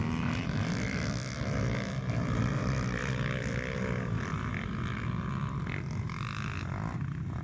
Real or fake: real